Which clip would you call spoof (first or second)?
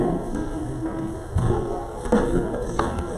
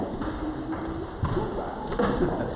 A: first